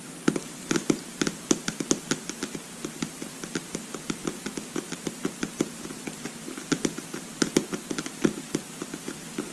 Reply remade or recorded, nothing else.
recorded